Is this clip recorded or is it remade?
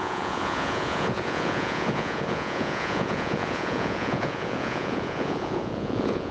remade